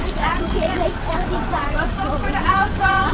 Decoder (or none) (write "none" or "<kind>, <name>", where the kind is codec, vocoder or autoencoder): vocoder, WaveNeXt